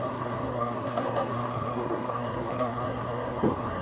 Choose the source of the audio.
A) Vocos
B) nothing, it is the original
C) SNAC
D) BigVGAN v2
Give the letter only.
C